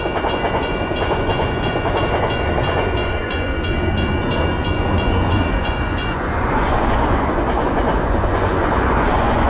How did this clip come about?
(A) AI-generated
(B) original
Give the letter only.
A